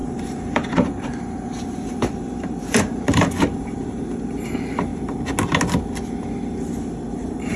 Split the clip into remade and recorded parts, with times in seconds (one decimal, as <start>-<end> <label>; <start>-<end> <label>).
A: 0.0-4.9 remade; 4.9-7.1 recorded; 7.1-7.6 remade